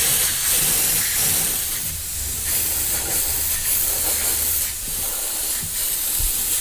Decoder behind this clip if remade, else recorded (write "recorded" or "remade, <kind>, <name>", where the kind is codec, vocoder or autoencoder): recorded